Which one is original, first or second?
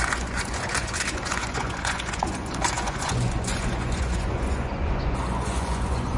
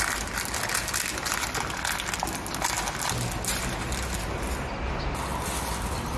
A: second